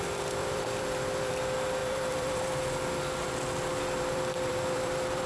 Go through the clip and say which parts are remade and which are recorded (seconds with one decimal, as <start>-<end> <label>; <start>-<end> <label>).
0.0-0.4 recorded; 0.4-1.4 remade; 1.4-1.8 recorded; 1.8-2.6 remade; 2.6-3.7 recorded; 3.7-5.3 remade